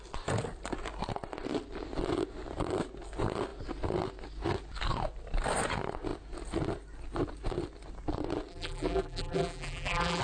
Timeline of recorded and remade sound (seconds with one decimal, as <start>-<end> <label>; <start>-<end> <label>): 0.0-8.5 recorded; 8.5-10.2 remade